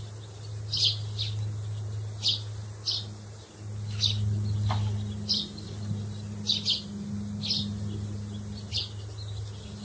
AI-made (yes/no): no